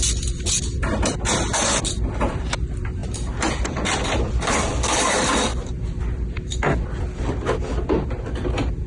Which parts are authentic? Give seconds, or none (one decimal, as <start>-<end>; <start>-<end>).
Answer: 5.5-8.9